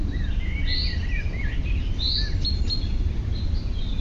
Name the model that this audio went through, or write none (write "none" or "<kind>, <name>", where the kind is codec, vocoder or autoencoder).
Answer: none